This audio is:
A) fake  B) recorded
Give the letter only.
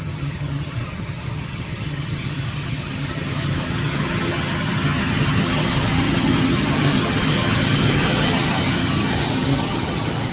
A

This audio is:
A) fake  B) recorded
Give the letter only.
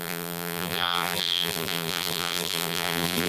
A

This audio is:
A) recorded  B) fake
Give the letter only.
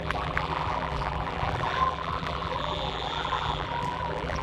B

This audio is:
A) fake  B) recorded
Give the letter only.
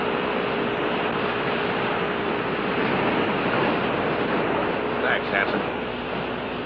A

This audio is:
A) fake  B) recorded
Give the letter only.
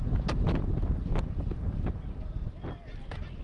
B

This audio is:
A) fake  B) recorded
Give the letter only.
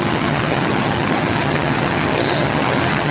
A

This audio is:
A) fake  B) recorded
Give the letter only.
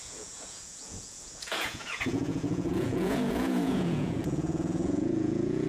A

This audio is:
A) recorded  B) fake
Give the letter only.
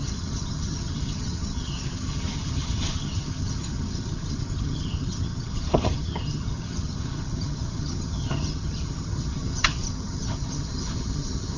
B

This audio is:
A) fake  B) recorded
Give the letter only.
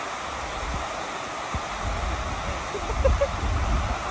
B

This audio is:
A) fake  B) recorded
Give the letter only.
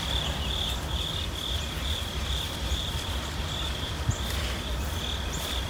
A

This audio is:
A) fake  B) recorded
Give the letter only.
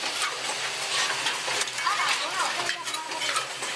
B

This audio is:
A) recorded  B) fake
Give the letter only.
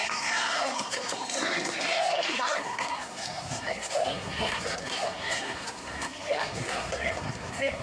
B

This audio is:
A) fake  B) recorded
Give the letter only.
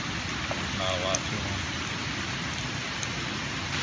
B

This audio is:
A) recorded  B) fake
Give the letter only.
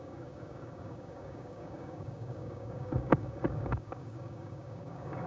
B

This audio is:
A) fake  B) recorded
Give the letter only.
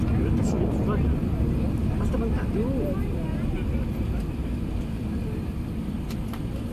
B